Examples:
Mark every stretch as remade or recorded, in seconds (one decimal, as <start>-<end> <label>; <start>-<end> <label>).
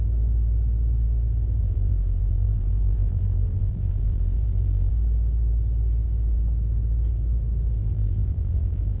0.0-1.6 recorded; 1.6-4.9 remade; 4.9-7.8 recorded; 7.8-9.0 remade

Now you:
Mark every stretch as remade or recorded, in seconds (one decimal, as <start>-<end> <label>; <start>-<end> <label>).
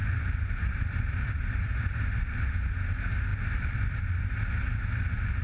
0.0-2.5 remade; 2.5-3.3 recorded; 3.3-4.0 remade; 4.0-5.4 recorded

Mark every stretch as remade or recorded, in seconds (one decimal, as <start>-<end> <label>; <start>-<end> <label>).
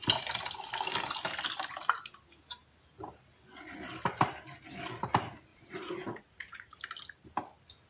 0.0-5.5 recorded; 5.5-6.8 remade; 6.8-7.9 recorded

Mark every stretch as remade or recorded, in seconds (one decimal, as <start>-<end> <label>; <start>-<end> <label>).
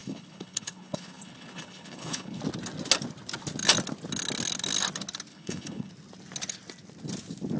0.0-2.4 remade; 2.4-5.3 recorded; 5.3-5.9 remade; 5.9-7.6 recorded